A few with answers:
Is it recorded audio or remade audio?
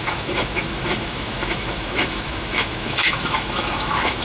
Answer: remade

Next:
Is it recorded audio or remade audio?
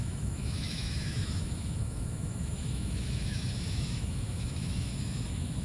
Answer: remade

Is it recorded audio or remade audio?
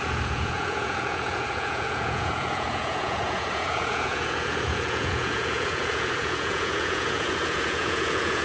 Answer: remade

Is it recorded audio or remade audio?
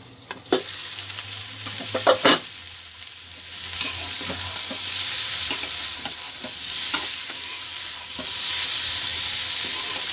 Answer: recorded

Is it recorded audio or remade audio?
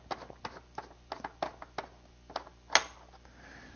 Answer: recorded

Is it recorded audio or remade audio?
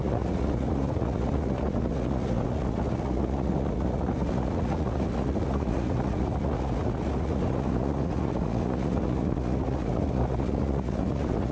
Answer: remade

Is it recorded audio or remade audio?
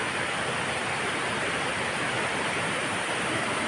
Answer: recorded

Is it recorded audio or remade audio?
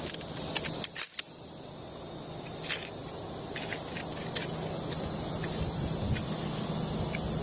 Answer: recorded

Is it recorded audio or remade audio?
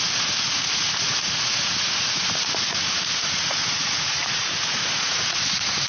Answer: remade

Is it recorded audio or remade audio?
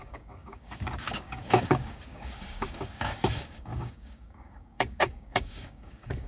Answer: remade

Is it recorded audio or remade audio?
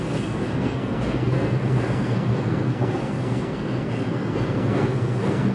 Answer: remade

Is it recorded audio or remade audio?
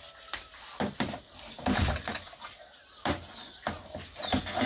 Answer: recorded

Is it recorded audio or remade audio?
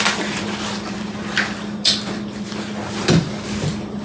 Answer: recorded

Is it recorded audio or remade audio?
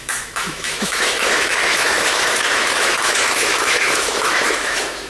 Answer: remade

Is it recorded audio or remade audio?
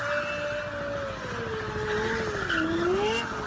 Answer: recorded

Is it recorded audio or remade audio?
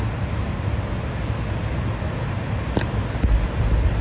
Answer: recorded